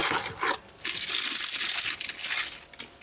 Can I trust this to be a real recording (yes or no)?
yes